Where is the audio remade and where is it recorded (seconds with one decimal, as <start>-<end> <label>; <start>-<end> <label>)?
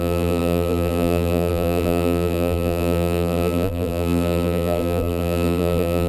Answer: 0.0-6.1 remade